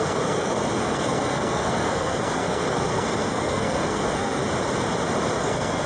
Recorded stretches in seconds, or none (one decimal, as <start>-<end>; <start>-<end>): 4.4-5.4